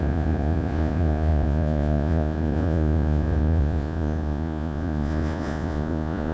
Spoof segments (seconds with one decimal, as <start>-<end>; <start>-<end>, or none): 0.0-6.3